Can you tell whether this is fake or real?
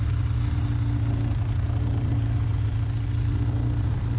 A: real